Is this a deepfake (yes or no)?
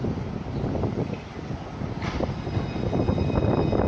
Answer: no